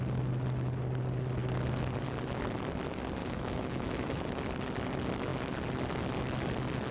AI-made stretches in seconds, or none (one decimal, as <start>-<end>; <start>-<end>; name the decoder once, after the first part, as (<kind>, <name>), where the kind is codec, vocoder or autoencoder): 3.2-4.4 (autoencoder, DAC-VAE)